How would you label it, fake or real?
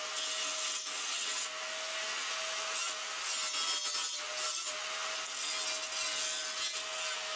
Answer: real